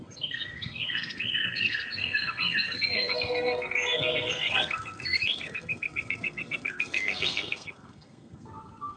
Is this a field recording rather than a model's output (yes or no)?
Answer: no